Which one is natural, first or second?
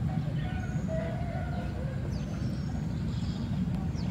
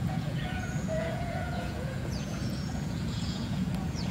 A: first